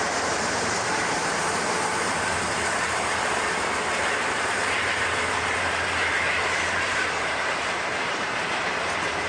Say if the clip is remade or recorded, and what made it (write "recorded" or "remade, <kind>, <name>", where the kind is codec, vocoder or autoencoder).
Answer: remade, vocoder, BigVGAN v2